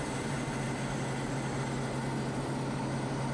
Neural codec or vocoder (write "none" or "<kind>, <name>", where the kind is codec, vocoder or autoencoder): none